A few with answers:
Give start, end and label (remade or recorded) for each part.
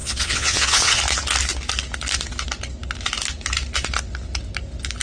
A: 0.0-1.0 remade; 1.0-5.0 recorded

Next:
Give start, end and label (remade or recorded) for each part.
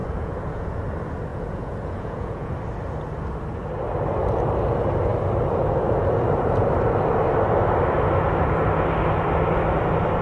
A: 0.0-0.8 remade; 0.8-1.3 recorded; 1.3-2.5 remade; 2.5-10.2 recorded